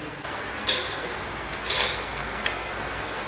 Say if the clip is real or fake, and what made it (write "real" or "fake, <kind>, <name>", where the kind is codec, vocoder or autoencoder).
fake, codec, SNAC